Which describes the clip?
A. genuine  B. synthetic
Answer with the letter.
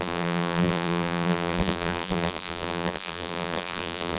B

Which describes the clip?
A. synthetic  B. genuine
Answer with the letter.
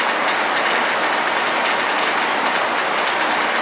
B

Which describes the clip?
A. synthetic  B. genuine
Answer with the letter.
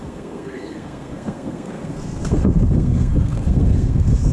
A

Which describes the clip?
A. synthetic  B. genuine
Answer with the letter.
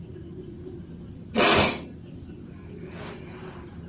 B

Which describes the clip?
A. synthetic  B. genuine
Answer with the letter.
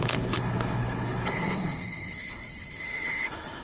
A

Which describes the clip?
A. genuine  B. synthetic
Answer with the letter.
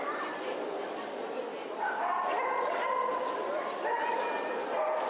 A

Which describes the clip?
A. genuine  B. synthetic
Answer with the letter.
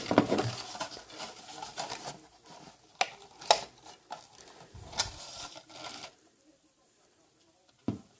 A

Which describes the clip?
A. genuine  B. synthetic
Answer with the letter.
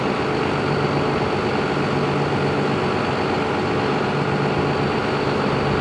A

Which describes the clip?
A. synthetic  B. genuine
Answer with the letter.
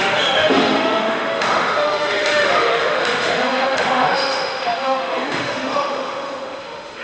A